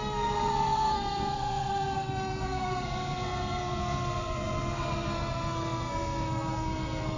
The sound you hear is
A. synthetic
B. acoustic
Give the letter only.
A